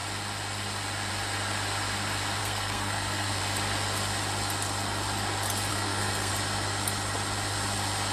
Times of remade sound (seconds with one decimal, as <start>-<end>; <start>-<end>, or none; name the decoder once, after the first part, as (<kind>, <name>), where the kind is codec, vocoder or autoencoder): 2.4-3.4 (codec, SNAC); 5.7-6.3